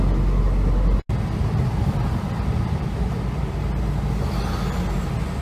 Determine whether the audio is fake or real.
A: real